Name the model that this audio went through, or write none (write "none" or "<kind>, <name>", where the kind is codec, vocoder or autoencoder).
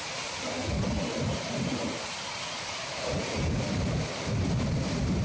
none